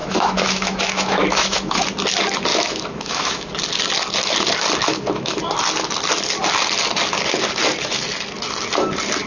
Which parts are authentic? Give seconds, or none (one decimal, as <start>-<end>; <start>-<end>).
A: 1.8-2.5; 3.5-4.9; 5.4-9.3